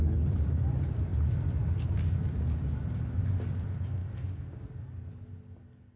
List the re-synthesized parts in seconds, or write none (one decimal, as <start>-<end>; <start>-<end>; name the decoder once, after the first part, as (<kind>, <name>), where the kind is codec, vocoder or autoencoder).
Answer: none